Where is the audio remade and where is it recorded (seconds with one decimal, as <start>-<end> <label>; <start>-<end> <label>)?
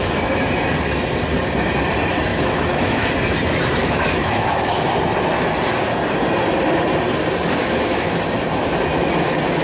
0.0-2.3 recorded; 2.3-3.1 remade; 3.1-3.8 recorded; 3.8-4.9 remade; 4.9-7.6 recorded; 7.6-8.2 remade; 8.2-9.6 recorded